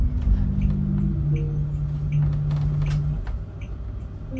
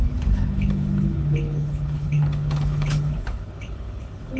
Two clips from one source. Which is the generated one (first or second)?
second